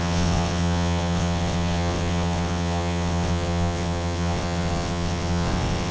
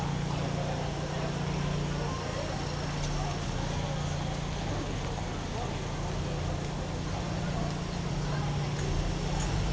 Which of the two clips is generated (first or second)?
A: first